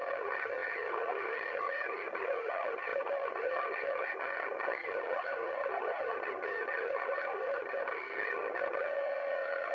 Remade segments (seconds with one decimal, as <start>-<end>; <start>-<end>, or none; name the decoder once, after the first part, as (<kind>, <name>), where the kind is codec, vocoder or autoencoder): 0.0-9.7 (vocoder, HiFi-GAN)